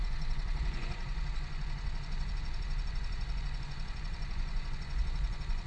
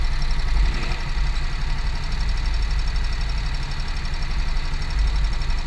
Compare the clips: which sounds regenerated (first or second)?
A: first